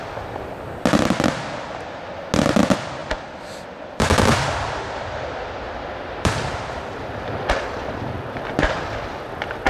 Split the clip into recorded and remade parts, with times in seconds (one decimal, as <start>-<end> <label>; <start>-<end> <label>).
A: 0.0-3.0 recorded; 3.0-7.9 remade; 7.9-9.7 recorded